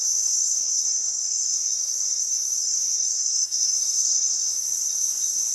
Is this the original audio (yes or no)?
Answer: no